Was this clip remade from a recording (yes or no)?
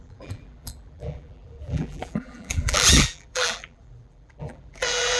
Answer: yes